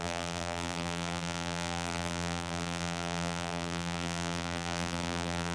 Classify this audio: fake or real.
fake